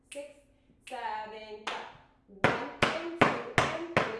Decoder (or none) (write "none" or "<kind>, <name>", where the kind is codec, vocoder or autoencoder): none